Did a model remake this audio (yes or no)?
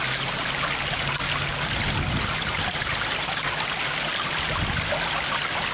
no